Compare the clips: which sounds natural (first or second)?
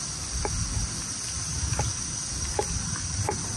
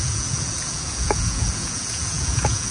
first